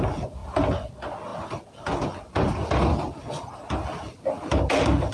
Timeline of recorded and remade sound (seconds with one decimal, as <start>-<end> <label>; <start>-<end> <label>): 0.0-5.1 recorded